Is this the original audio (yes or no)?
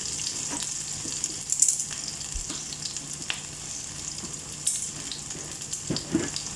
yes